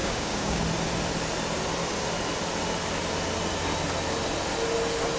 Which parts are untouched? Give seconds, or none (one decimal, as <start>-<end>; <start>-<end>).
0.6-5.2